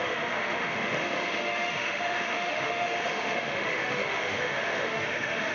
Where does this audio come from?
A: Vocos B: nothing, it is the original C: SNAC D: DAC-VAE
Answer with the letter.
D